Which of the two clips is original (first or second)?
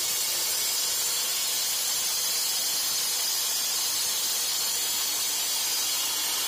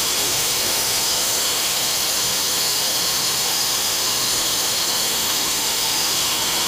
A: first